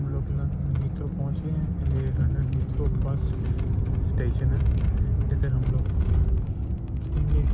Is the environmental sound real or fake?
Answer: real